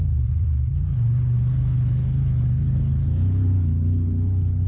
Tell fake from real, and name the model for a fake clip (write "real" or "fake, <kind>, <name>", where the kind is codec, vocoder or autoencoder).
fake, codec, HILCodec